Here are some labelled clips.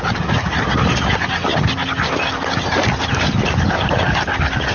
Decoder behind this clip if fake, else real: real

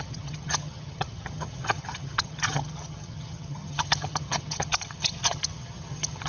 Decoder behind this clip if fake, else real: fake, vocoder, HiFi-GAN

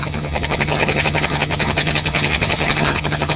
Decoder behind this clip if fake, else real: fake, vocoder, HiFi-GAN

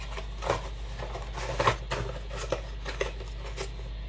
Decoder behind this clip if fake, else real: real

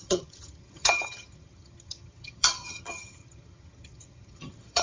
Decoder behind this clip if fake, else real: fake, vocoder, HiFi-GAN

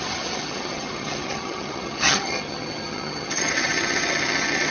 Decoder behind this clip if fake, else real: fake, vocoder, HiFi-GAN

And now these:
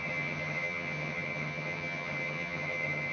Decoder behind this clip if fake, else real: fake, vocoder, HiFi-GAN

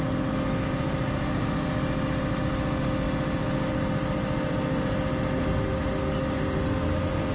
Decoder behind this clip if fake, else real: real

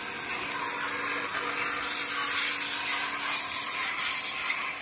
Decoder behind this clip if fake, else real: real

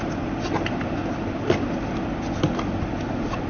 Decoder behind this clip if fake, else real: real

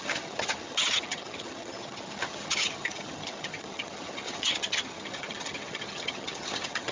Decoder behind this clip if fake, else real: fake, vocoder, HiFi-GAN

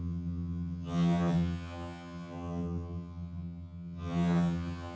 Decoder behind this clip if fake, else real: fake, vocoder, HiFi-GAN